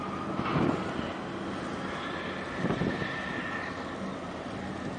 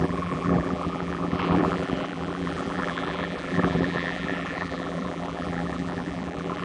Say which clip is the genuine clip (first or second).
first